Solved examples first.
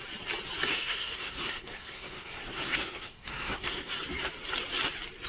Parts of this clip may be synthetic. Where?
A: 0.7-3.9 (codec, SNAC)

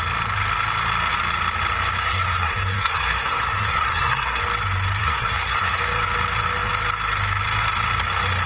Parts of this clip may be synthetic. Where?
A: 2.0-4.4 (codec, SNAC); 5.0-5.8

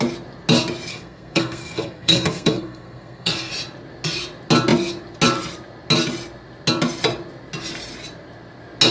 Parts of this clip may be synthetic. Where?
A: 0.9-3.5 (codec, SNAC)

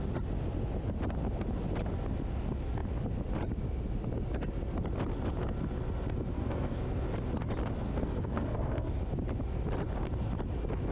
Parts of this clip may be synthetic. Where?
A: 6.3-6.8 (codec, SNAC); 7.9-8.9

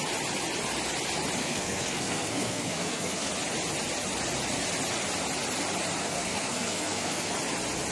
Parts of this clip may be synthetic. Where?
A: 1.4-3.3 (codec, SNAC); 6.0-7.3